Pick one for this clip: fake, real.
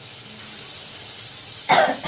real